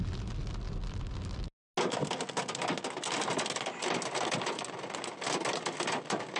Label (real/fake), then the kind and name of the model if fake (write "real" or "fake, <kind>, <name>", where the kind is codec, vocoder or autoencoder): real